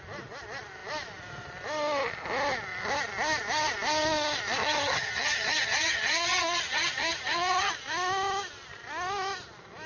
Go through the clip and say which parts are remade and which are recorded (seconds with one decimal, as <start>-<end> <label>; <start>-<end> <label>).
0.0-4.6 recorded; 4.6-7.7 remade; 7.7-9.9 recorded